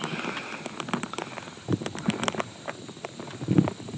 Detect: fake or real real